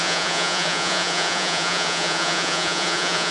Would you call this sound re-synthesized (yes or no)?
yes